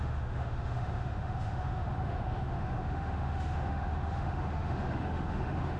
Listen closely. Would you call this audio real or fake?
fake